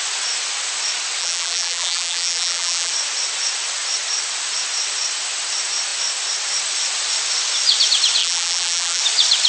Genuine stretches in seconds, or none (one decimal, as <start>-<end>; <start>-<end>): 0.0-1.2; 2.9-8.2; 9.0-9.5